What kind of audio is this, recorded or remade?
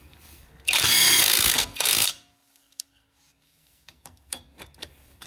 remade